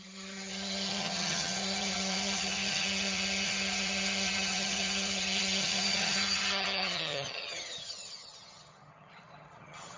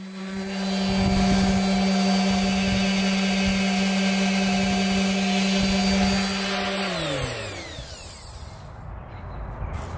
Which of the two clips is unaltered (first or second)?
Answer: second